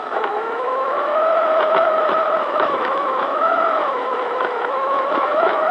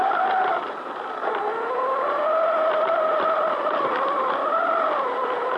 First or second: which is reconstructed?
first